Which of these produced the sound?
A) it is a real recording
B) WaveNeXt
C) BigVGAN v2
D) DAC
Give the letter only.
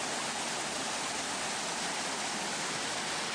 A